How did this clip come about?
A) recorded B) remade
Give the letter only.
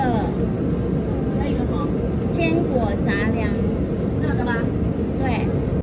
A